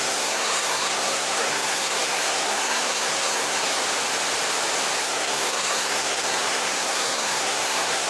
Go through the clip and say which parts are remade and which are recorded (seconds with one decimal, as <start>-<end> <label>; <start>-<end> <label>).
0.0-3.8 remade; 3.8-5.0 recorded; 5.0-8.1 remade